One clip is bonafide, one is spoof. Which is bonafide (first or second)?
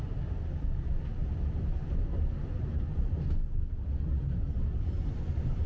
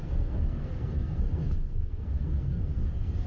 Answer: first